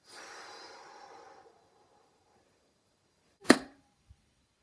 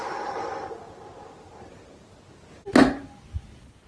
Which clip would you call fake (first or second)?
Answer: first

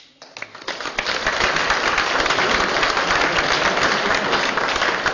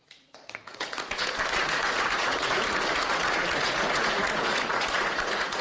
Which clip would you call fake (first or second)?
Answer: second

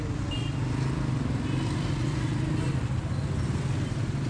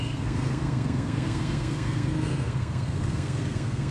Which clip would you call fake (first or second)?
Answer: second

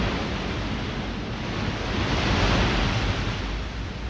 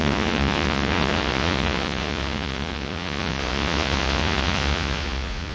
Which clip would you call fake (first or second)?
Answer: second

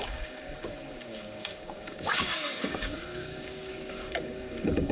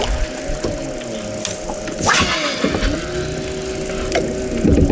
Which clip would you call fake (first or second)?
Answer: first